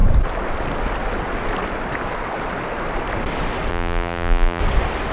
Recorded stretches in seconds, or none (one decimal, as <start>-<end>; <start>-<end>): 0.0-3.7; 4.6-5.1